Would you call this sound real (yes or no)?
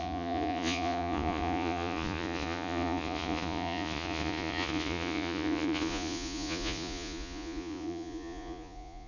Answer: no